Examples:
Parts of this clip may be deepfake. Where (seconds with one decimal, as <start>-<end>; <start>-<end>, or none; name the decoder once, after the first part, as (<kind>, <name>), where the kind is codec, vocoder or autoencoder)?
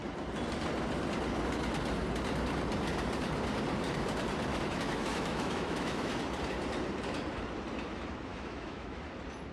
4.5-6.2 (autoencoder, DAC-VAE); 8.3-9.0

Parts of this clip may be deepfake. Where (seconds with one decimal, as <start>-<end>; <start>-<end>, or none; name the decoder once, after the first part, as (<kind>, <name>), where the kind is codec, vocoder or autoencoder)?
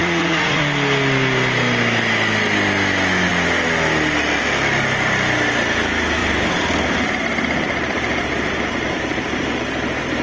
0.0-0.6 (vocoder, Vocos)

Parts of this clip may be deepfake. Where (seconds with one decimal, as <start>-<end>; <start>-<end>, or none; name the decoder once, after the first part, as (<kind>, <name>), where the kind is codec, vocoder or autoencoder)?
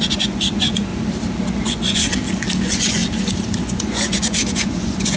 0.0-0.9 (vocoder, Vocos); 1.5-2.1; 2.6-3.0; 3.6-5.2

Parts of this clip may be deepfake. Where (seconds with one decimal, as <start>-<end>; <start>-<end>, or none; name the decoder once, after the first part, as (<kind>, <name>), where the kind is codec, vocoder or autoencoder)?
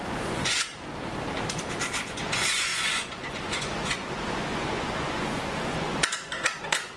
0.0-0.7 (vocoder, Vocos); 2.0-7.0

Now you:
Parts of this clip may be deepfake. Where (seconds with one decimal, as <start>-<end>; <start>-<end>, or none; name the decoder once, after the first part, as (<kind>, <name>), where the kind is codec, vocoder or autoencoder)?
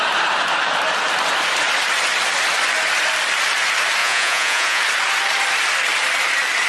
4.0-4.8 (vocoder, Vocos)